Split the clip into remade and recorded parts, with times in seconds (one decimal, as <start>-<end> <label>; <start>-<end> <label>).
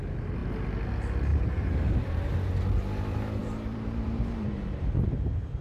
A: 0.0-1.3 recorded; 1.3-2.3 remade; 2.3-3.4 recorded; 3.4-5.6 remade